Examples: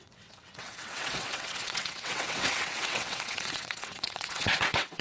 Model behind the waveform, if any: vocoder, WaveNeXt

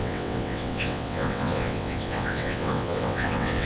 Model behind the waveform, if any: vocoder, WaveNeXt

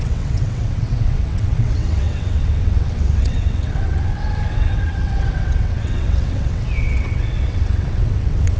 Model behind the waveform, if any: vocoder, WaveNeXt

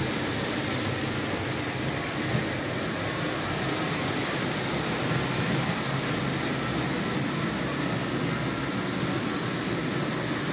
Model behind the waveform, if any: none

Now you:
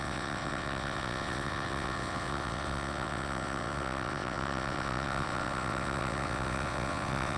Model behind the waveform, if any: vocoder, WaveNeXt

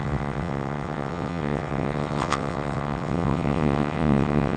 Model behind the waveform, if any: vocoder, WaveNeXt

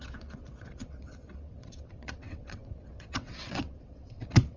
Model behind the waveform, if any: vocoder, WaveNeXt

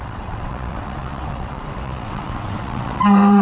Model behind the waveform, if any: vocoder, WaveNeXt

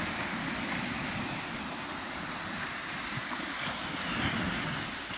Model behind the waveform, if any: none